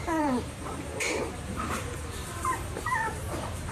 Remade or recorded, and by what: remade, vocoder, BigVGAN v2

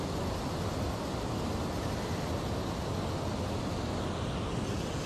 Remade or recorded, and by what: recorded